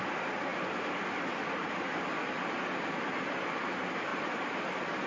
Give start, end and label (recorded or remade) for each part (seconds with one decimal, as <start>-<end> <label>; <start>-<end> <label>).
0.0-5.1 recorded